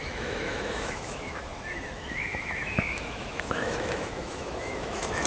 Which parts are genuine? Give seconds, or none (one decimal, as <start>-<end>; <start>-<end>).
none